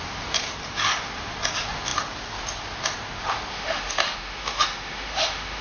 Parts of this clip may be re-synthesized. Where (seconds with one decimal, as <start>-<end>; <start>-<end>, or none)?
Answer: 3.5-5.6